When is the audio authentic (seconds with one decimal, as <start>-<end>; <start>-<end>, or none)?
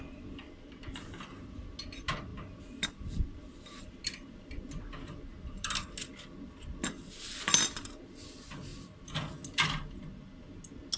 0.0-11.0